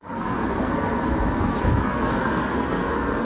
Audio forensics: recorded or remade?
remade